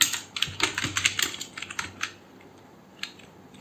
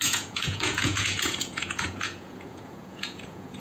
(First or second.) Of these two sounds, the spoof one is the second